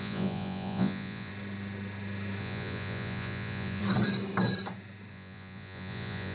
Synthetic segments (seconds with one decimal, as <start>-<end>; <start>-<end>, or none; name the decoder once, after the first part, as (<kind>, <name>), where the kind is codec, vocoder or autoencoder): 0.0-1.3 (vocoder, Vocos); 2.4-3.8; 5.1-6.3